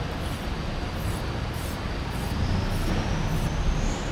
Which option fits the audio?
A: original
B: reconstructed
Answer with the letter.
A